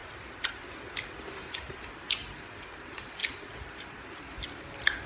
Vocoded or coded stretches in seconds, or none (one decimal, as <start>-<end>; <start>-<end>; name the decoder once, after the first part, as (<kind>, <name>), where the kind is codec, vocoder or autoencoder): 1.3-2.2 (vocoder, BigVGAN v2); 2.7-5.1